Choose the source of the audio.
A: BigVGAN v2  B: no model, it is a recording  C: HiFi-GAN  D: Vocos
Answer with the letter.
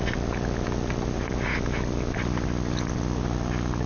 B